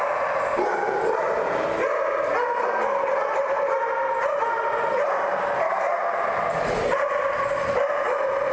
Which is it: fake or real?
real